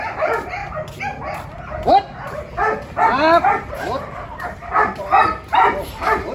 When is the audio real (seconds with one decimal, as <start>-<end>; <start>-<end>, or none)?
0.6-3.7